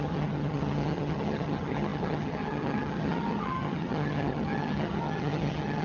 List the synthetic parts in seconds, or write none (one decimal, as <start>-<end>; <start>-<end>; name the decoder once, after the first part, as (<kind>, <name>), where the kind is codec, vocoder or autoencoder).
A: 0.0-5.8 (vocoder, HiFi-GAN)